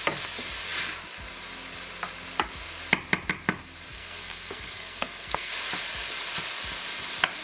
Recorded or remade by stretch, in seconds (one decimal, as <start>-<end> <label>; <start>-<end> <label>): 0.0-3.9 recorded; 3.9-5.5 remade; 5.5-7.4 recorded